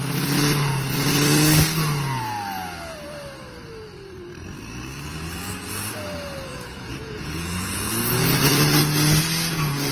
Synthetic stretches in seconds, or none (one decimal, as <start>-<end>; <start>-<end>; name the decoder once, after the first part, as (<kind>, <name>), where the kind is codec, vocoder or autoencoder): 6.5-7.9 (vocoder, Vocos)